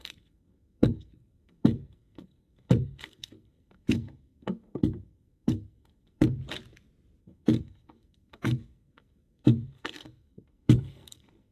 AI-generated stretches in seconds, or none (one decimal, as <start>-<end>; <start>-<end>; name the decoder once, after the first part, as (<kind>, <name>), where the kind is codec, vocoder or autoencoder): 0.0-6.4 (codec, SNAC); 7.2-11.5